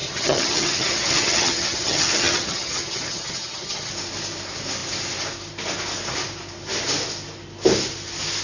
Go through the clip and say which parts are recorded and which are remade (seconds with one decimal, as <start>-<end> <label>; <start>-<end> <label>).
0.0-3.9 remade; 3.9-8.4 recorded